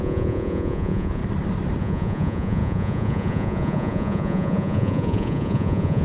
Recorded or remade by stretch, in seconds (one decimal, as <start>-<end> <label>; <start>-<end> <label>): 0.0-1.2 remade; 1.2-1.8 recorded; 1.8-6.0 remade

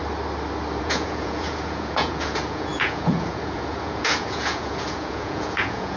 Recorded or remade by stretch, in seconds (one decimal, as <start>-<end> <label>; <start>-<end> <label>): 0.0-0.8 recorded; 0.8-6.0 remade

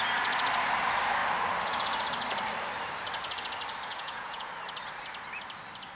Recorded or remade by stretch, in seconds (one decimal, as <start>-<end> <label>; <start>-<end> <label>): 0.0-3.9 recorded; 3.9-4.5 remade; 4.5-6.0 recorded

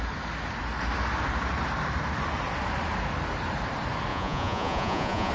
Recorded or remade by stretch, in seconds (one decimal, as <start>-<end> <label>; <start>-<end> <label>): 0.0-4.1 recorded; 4.1-5.3 remade

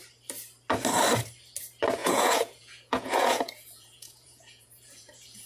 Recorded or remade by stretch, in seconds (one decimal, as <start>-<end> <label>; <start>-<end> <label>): 0.0-2.0 recorded; 2.0-5.5 remade